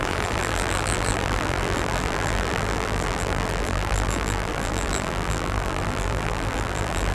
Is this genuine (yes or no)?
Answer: no